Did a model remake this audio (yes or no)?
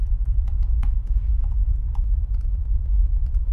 yes